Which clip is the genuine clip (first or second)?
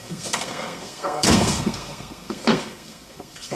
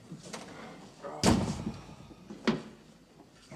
second